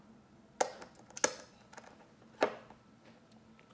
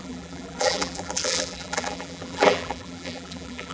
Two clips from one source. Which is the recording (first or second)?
first